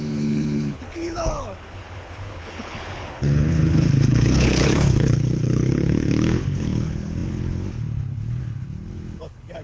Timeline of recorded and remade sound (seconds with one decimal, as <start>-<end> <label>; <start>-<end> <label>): 0.0-9.6 remade